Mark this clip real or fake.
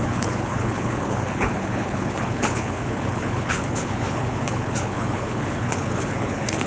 fake